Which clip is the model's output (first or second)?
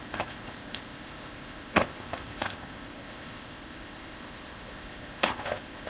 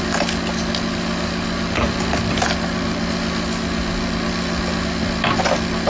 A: first